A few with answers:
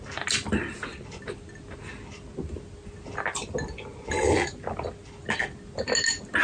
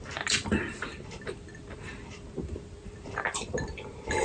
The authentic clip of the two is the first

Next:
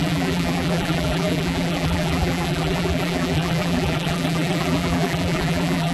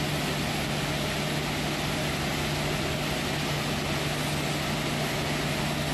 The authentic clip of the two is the second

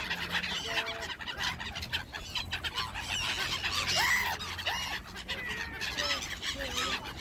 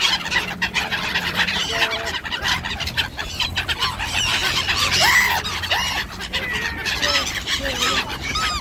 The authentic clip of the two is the first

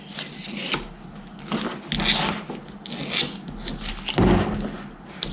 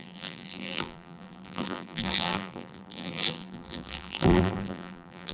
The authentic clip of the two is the first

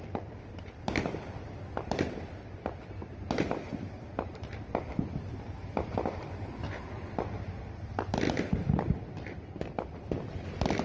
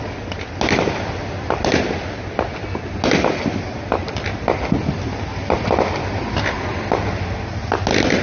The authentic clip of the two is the second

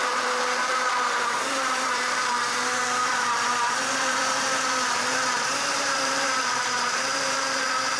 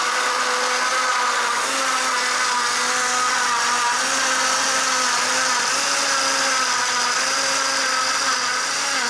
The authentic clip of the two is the second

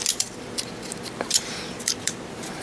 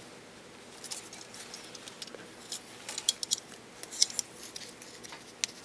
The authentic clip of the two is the second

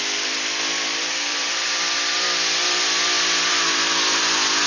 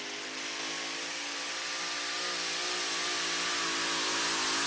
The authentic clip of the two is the second